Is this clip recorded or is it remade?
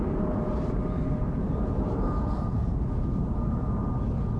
remade